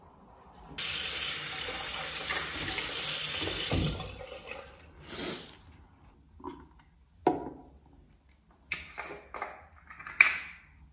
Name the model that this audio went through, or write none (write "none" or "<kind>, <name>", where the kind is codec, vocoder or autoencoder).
none